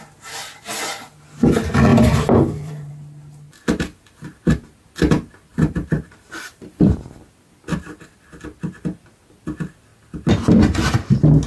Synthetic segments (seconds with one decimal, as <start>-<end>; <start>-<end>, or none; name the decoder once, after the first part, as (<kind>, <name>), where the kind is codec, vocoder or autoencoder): 1.9-2.9 (vocoder, BigVGAN v2); 5.5-7.0